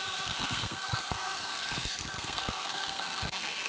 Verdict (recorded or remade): remade